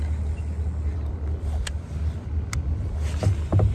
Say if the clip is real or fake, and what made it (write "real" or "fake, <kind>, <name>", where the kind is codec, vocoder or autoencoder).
real